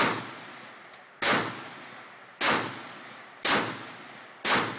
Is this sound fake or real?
real